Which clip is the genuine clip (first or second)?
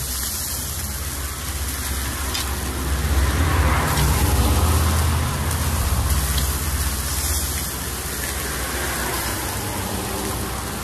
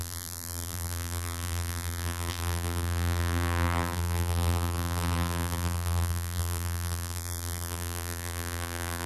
first